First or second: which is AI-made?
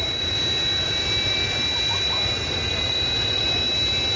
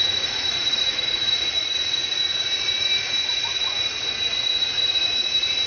second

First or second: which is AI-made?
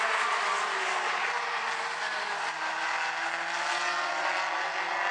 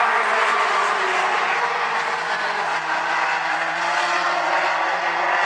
second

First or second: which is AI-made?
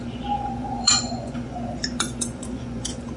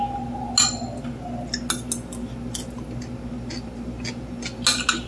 first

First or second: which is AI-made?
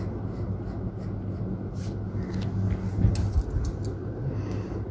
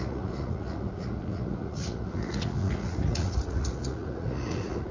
second